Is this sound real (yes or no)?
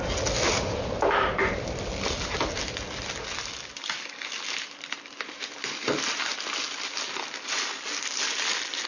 yes